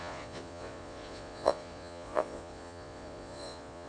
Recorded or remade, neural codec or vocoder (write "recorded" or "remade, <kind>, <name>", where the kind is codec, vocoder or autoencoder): remade, vocoder, Vocos